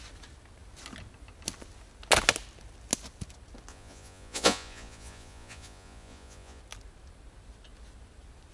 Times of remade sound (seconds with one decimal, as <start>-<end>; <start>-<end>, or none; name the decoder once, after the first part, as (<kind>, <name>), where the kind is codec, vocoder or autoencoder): 3.7-6.6 (vocoder, Vocos)